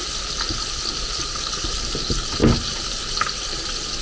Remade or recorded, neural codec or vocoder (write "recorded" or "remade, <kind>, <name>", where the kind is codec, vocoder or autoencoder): recorded